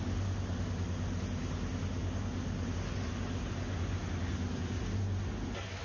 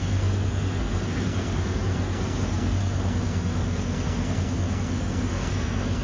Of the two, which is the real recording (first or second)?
first